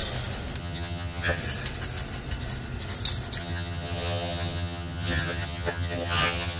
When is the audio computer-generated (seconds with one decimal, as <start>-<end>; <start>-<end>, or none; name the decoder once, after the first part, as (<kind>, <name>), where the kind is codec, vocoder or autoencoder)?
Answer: 0.6-1.4 (vocoder, HiFi-GAN); 3.4-6.6